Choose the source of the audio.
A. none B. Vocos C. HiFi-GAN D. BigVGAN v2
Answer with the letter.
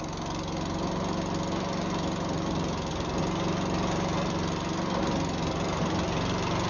A